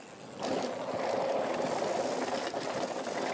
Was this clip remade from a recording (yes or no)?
no